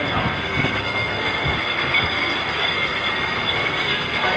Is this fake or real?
fake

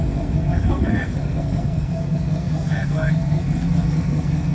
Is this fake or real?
fake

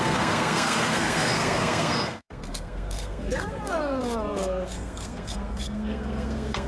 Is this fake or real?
fake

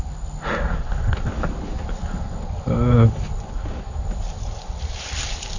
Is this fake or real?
real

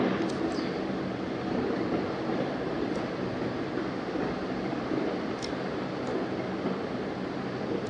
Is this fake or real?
real